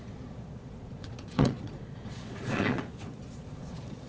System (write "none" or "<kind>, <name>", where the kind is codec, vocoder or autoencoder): vocoder, Vocos